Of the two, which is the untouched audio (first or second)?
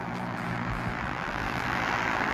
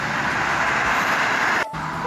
second